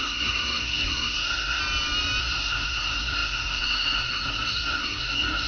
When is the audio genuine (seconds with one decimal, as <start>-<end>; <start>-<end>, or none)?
1.6-2.2